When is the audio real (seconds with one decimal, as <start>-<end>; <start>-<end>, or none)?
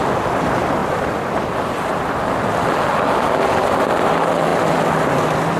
0.0-0.8; 1.4-5.6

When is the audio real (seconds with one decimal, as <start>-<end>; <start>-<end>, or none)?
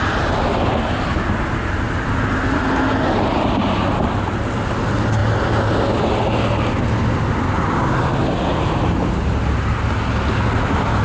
0.0-11.0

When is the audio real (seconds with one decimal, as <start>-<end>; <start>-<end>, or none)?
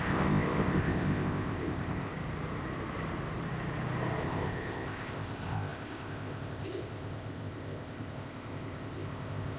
2.1-4.2